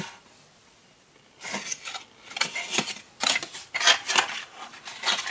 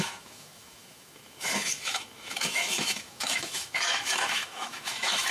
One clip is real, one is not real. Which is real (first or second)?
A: first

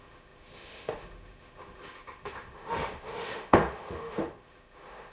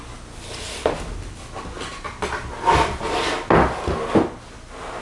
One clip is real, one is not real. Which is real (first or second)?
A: second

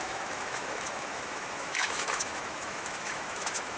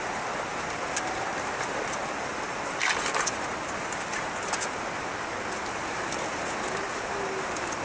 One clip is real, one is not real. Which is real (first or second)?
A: second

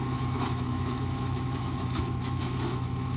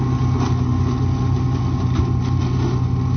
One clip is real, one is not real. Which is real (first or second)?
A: second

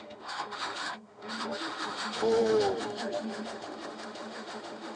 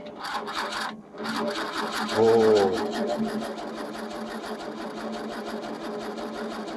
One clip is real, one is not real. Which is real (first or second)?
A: second